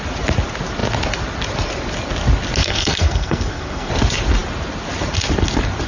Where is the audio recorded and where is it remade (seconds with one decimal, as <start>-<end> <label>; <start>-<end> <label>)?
0.0-2.6 recorded; 2.6-3.9 remade; 3.9-5.9 recorded